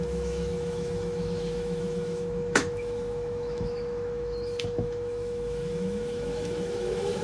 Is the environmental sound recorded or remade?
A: remade